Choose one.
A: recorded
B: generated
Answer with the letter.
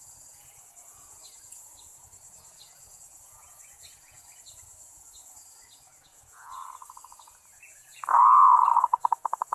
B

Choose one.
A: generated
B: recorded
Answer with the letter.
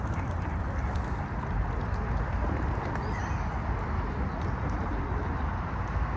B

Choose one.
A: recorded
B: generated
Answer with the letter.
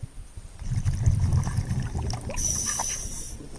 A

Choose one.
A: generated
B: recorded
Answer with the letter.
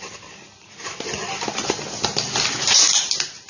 B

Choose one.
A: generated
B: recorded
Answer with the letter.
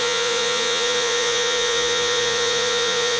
A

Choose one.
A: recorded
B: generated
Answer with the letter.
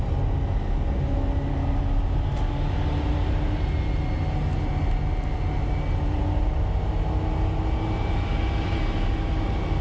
A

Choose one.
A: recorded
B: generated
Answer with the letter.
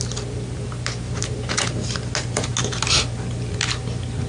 A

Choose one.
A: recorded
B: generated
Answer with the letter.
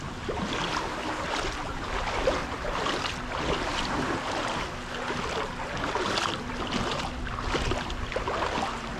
A